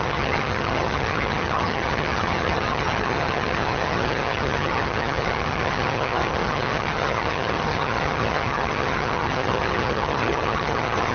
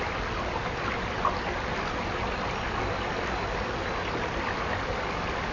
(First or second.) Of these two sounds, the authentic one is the second